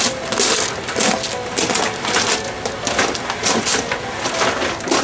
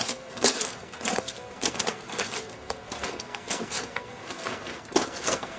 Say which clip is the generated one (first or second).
second